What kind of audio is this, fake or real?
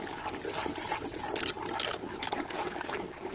real